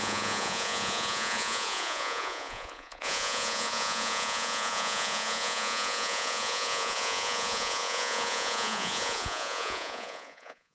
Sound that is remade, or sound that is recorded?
remade